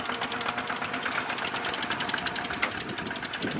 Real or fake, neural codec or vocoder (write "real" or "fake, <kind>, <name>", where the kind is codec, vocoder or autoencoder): real